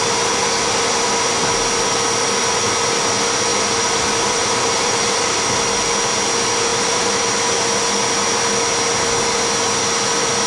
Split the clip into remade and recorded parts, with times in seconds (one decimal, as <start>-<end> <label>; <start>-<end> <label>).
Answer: 0.0-3.5 recorded; 3.5-5.5 remade; 5.5-6.7 recorded; 6.7-7.2 remade; 7.2-10.5 recorded